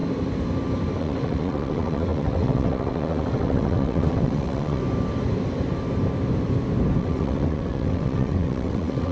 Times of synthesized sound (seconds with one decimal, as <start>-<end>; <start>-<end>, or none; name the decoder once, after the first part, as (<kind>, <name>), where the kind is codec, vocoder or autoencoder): 1.0-4.8 (vocoder, WaveNeXt); 7.0-9.1